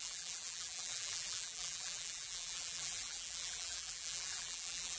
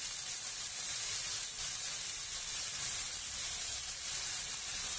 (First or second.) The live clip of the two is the second